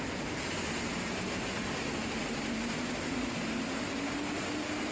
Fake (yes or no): no